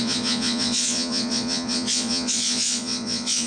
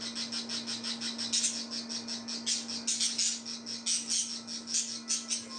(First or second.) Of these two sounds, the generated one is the first